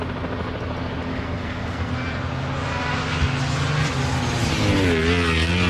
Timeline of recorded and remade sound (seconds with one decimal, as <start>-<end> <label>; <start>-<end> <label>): 0.0-1.1 recorded; 1.1-1.9 remade; 1.9-5.7 recorded